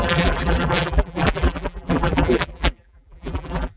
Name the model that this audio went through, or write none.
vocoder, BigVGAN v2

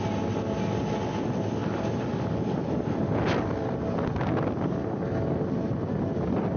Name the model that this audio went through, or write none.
none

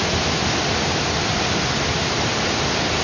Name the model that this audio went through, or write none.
vocoder, BigVGAN v2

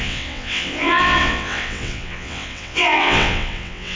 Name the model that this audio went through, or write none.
vocoder, WaveNeXt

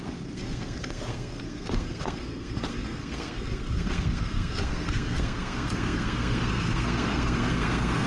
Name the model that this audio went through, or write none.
codec, SNAC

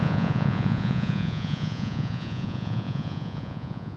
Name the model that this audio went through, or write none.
vocoder, Vocos